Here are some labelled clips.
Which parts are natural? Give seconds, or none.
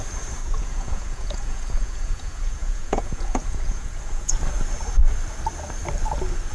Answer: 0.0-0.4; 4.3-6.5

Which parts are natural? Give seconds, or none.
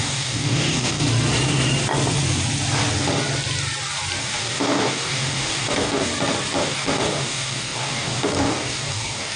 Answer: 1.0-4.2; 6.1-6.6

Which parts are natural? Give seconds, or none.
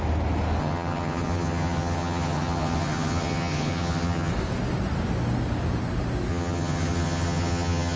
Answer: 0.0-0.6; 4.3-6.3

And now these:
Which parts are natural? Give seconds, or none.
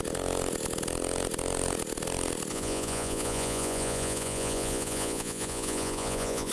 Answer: 0.0-2.5